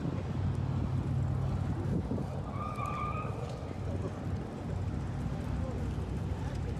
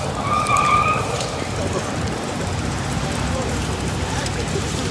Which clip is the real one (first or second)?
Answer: first